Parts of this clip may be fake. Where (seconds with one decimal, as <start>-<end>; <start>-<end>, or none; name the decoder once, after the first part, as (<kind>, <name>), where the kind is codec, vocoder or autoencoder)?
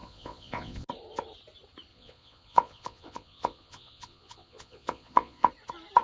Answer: 0.0-0.9 (vocoder, Vocos); 1.9-5.5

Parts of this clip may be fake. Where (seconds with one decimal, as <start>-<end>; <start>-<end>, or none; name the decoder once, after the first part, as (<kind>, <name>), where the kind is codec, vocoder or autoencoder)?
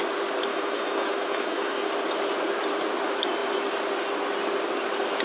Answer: 0.5-1.9 (autoencoder, DAC-VAE)